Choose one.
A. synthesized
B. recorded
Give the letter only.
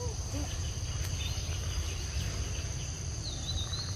A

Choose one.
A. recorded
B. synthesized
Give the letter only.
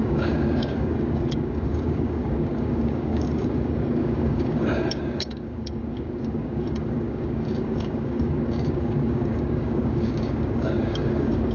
B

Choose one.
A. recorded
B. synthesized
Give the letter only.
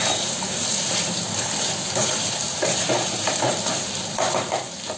B